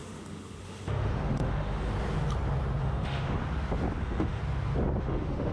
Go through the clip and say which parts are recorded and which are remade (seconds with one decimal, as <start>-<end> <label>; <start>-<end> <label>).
0.0-1.9 remade; 1.9-2.8 recorded; 2.8-3.4 remade; 3.4-4.0 recorded; 4.0-4.4 remade; 4.4-5.0 recorded; 5.0-5.5 remade